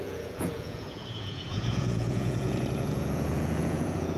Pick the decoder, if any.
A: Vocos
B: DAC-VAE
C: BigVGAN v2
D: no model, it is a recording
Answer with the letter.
A